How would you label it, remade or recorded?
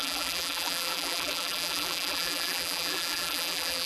remade